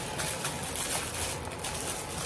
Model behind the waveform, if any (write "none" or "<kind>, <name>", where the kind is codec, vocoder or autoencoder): none